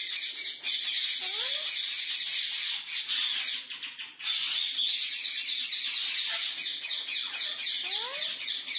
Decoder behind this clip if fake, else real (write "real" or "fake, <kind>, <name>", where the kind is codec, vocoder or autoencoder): real